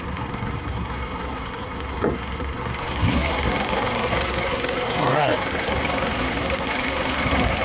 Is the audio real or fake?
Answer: fake